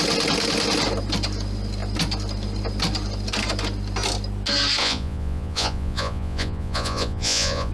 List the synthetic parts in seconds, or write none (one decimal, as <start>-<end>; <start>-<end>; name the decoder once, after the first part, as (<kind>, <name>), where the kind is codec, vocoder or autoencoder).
4.8-7.7 (vocoder, Vocos)